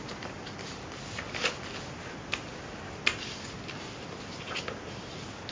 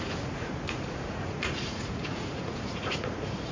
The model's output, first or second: second